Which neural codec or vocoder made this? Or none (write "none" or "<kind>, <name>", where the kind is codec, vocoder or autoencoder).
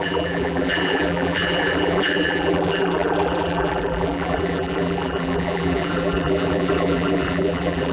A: vocoder, BigVGAN v2